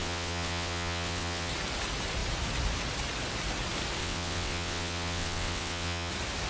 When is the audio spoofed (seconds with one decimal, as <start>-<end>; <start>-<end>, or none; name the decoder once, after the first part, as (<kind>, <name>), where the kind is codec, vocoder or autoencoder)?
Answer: 0.0-1.5 (vocoder, WaveNeXt); 4.0-6.1